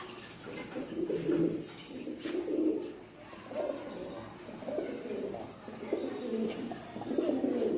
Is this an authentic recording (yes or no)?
yes